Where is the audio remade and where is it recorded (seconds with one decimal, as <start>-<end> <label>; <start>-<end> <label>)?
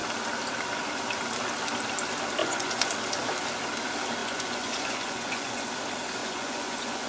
0.0-2.4 recorded; 2.4-2.9 remade; 2.9-4.2 recorded; 4.2-5.7 remade; 5.7-6.2 recorded; 6.2-7.1 remade